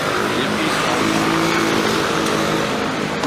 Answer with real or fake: real